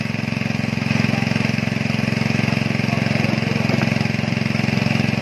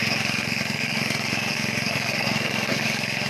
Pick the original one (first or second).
first